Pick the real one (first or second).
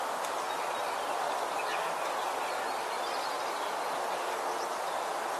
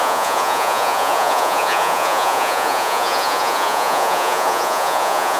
first